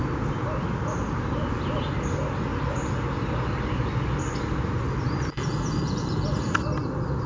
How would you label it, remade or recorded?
recorded